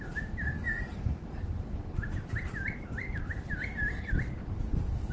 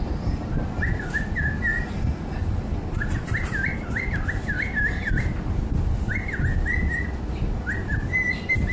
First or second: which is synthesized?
first